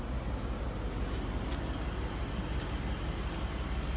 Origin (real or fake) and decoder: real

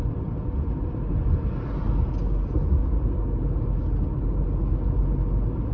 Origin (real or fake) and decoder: real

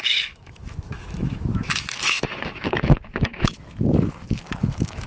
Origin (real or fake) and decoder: fake, autoencoder, DAC-VAE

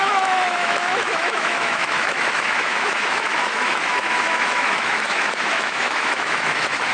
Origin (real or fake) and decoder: fake, autoencoder, DAC-VAE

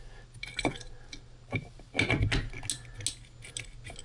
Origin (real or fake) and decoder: real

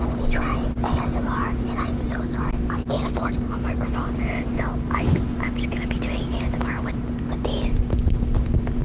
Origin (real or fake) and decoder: real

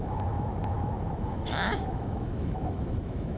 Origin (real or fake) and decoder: fake, autoencoder, DAC-VAE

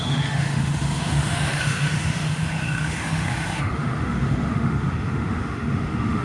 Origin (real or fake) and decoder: fake, autoencoder, DAC-VAE